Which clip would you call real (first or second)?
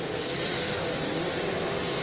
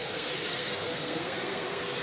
first